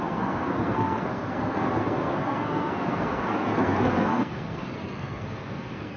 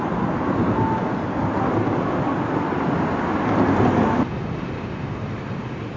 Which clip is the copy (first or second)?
first